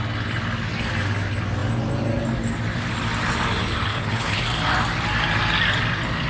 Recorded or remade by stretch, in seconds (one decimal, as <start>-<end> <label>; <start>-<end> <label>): 0.0-3.9 recorded; 3.9-4.4 remade; 4.4-6.3 recorded